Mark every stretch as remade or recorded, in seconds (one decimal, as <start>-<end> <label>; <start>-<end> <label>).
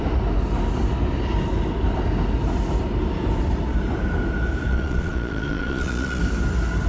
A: 0.0-4.7 recorded; 4.7-6.2 remade; 6.2-6.9 recorded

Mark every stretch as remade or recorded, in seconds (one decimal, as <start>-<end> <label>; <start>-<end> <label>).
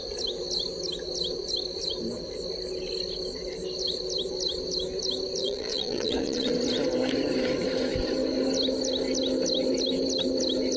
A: 0.0-5.4 recorded; 5.4-6.5 remade; 6.5-10.8 recorded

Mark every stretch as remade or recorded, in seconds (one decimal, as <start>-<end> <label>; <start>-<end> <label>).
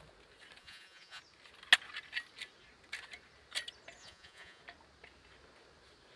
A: 0.0-0.6 recorded; 0.6-1.2 remade; 1.2-4.0 recorded; 4.0-4.6 remade; 4.6-6.2 recorded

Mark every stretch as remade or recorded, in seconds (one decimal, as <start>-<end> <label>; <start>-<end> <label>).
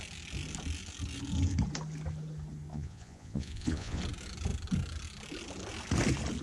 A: 0.0-2.7 recorded; 2.7-4.0 remade; 4.0-6.4 recorded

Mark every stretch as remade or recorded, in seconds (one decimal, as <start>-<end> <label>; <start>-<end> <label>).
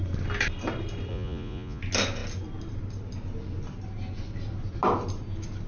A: 0.0-1.1 recorded; 1.1-1.8 remade; 1.8-5.7 recorded